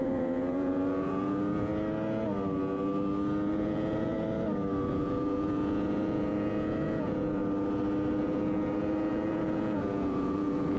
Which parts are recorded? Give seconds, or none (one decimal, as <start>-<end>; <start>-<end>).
1.7-3.5; 4.1-4.9; 7.4-8.2